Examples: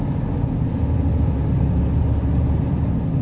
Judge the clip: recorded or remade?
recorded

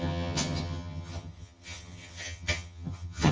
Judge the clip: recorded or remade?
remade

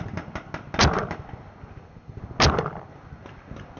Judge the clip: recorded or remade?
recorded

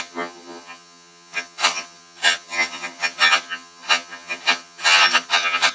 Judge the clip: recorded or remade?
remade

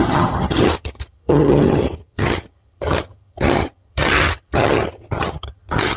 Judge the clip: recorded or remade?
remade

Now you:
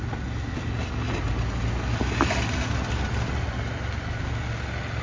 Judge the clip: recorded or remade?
recorded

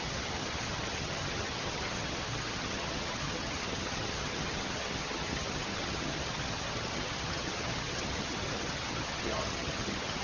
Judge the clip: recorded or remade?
remade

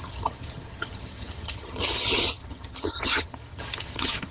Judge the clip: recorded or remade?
remade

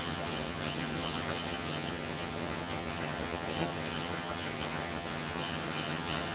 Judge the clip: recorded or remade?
remade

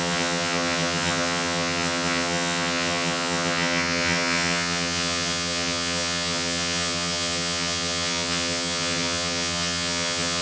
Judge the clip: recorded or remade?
remade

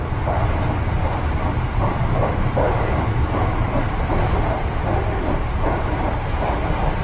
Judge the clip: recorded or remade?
recorded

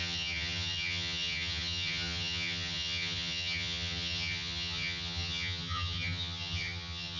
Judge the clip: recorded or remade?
remade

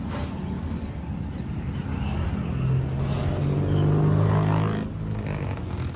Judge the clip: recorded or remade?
recorded